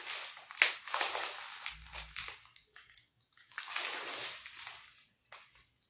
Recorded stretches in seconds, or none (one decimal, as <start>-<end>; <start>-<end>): 0.0-2.5; 3.7-5.9